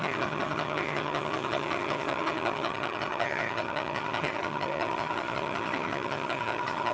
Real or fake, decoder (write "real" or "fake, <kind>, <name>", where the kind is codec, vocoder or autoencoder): fake, vocoder, HiFi-GAN